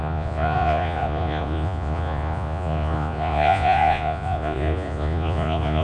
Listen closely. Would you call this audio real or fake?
fake